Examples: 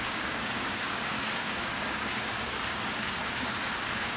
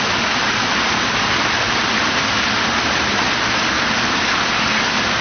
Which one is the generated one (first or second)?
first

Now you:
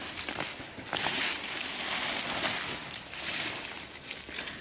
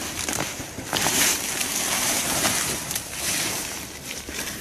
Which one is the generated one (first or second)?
second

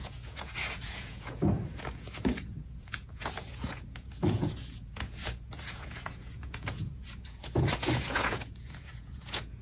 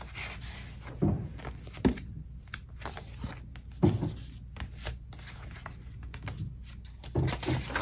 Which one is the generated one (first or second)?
first